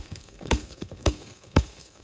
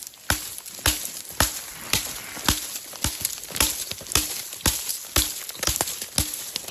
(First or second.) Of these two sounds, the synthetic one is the first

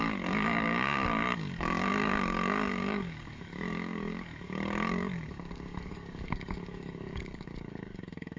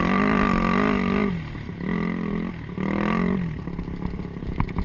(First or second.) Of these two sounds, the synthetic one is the first